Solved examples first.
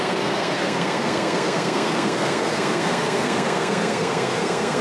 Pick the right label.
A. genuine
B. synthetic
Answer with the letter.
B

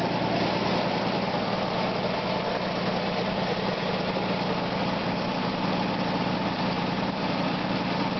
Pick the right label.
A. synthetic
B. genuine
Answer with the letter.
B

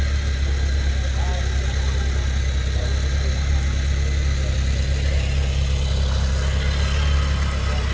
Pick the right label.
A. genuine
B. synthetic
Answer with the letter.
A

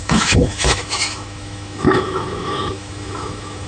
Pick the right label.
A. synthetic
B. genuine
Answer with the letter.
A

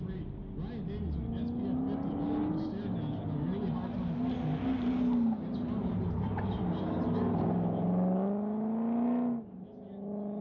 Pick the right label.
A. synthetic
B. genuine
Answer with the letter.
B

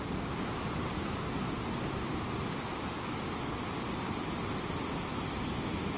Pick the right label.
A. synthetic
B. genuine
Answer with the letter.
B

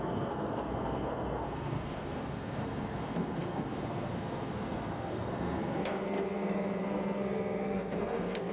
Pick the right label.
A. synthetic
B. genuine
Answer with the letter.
A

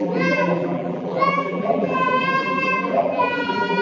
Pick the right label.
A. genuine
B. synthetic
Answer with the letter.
B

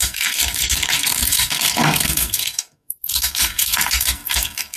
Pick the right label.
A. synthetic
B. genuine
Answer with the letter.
A